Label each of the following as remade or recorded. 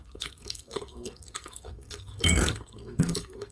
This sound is remade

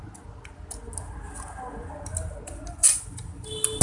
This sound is recorded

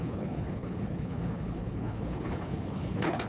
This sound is remade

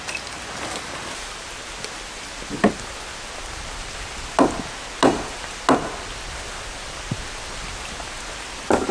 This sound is recorded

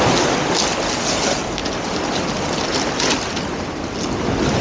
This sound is recorded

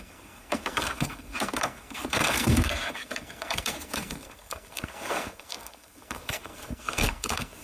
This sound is remade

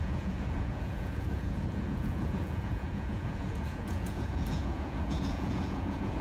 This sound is remade